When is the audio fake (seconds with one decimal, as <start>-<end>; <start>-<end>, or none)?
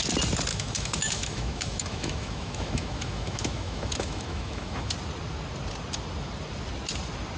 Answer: 0.5-4.9